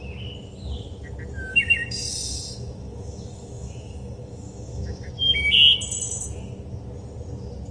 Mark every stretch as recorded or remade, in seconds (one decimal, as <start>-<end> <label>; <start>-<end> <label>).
0.0-1.5 recorded; 1.5-5.1 remade; 5.1-7.7 recorded